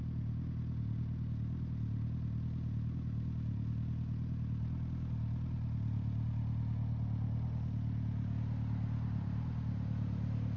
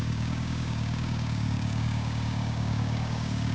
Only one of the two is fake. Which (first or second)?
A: second